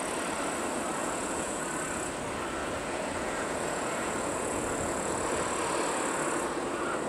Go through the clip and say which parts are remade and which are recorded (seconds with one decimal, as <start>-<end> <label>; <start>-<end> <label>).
0.0-1.0 recorded; 1.0-1.6 remade; 1.6-2.6 recorded; 2.6-5.1 remade; 5.1-7.1 recorded